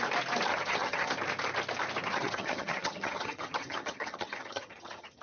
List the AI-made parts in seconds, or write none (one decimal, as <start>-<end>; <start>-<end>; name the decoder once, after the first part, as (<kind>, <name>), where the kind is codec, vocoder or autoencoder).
0.5-1.1 (vocoder, HiFi-GAN); 2.1-5.2